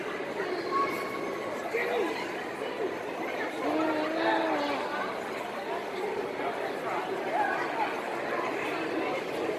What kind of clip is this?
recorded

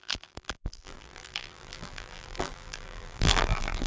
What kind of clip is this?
remade